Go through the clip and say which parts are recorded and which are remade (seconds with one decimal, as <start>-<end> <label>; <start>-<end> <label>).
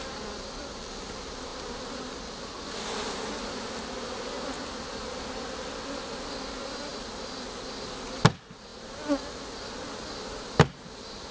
0.0-11.3 recorded